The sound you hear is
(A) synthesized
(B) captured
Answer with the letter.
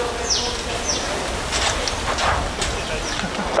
B